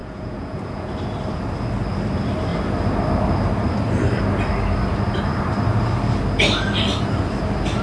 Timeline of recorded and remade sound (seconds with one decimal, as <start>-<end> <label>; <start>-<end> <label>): 0.0-0.9 remade; 0.9-7.8 recorded

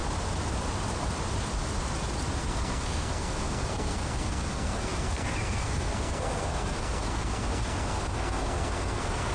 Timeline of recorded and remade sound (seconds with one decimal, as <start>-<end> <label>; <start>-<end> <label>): 0.0-2.4 recorded; 2.4-9.3 remade